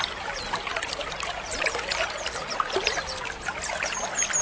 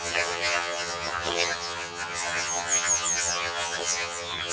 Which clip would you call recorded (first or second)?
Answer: first